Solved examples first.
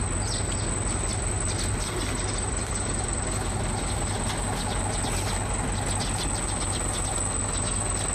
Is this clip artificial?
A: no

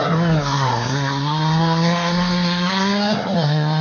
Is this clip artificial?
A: yes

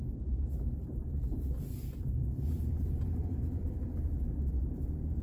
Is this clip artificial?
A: yes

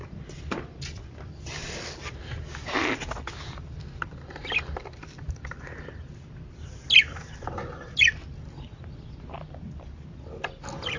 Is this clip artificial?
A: no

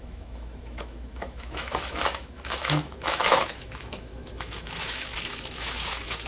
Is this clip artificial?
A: yes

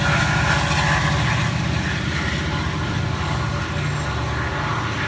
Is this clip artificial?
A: no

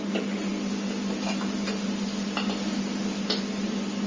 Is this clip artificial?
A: no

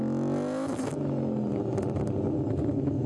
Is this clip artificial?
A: no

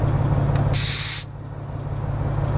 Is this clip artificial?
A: no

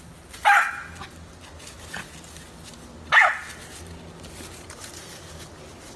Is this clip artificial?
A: no